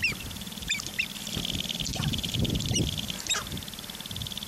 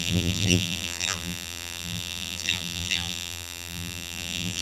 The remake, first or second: second